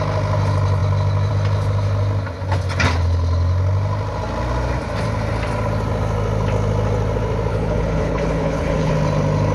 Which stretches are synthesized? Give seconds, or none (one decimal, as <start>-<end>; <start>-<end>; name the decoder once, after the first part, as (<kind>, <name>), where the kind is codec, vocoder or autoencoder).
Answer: 7.5-8.9 (codec, HILCodec)